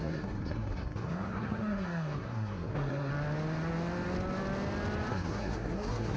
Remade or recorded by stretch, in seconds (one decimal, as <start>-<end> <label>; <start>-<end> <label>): 0.0-3.1 remade; 3.1-5.1 recorded; 5.1-6.2 remade